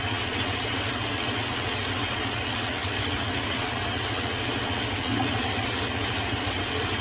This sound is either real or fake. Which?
fake